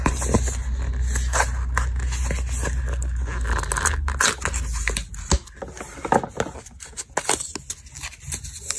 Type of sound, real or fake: real